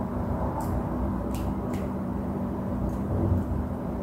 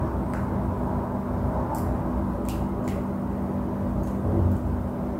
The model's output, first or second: first